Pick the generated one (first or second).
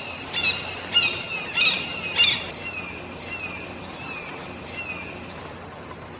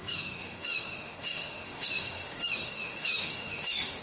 second